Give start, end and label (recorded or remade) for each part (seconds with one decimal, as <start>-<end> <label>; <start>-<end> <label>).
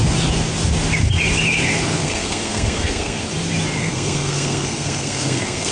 0.0-2.0 recorded; 2.0-3.2 remade; 3.2-3.8 recorded; 3.8-5.7 remade